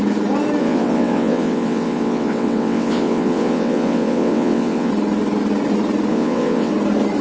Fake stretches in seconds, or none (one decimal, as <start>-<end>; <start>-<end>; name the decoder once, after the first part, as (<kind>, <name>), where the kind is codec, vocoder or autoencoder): 0.6-4.9 (vocoder, WaveNeXt); 6.1-6.7

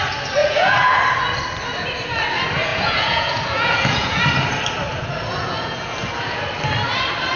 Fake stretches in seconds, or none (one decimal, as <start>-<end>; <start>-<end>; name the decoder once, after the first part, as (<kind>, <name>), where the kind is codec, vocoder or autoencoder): 0.4-1.0 (vocoder, Vocos); 2.7-4.2; 4.9-6.4

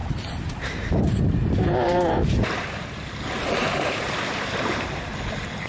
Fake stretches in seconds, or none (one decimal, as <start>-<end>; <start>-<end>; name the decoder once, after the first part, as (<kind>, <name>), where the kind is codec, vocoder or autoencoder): 0.0-5.7 (vocoder, BigVGAN v2)

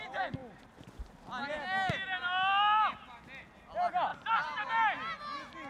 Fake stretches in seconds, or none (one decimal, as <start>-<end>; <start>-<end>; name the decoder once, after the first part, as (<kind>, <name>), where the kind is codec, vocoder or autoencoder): none

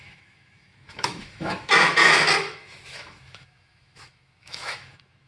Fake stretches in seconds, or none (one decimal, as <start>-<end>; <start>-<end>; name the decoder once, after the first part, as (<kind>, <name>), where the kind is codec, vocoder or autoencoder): 0.0-1.9 (autoencoder, DAC-VAE); 2.4-5.3